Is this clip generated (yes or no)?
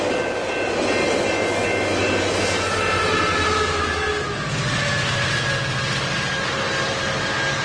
no